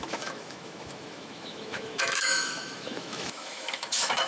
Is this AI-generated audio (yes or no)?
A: yes